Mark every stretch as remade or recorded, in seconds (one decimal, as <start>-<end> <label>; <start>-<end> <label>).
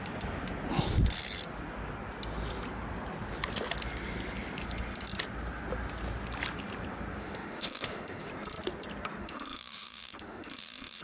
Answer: 0.0-7.2 recorded; 7.2-8.3 remade; 8.3-9.2 recorded; 9.2-11.0 remade